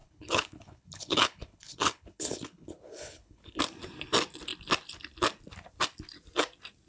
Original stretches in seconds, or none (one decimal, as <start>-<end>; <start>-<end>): 3.6-6.9